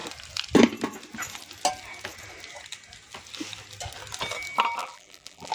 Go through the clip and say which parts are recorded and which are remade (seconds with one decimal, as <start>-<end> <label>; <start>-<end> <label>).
0.0-4.8 recorded; 4.8-5.5 remade